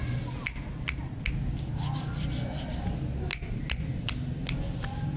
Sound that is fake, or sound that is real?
real